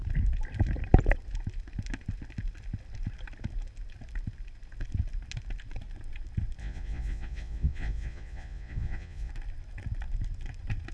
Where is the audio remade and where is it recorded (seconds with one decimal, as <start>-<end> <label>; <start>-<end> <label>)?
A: 0.0-6.6 recorded; 6.6-9.3 remade; 9.3-10.9 recorded